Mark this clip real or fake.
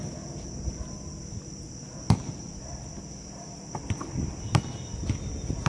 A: real